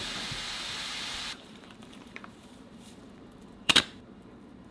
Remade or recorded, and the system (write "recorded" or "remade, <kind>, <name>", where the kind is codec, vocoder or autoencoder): remade, vocoder, BigVGAN v2